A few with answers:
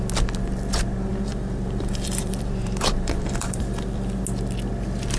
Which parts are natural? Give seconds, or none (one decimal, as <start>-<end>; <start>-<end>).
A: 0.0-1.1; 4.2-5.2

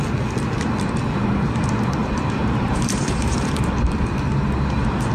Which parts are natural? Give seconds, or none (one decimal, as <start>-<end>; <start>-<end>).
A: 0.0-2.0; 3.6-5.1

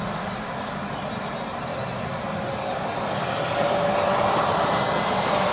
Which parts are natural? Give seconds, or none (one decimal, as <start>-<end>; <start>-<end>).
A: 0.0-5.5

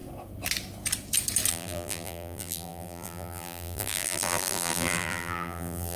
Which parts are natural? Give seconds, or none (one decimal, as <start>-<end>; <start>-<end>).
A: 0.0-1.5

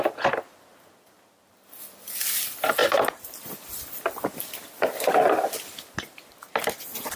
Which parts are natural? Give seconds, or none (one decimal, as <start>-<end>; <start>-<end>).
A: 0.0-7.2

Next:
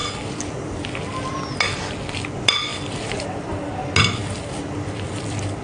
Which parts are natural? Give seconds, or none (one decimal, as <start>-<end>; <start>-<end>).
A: 0.8-2.7; 3.7-4.2

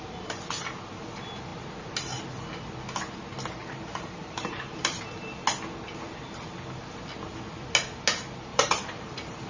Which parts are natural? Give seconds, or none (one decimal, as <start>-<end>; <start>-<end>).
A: 0.0-3.6; 5.0-8.5